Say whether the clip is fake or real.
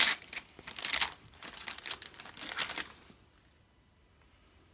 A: real